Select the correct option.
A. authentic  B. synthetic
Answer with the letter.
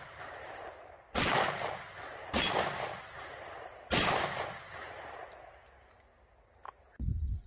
A